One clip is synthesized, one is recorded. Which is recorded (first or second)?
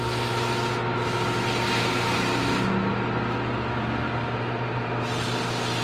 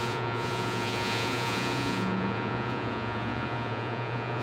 first